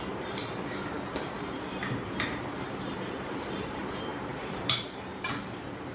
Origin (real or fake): fake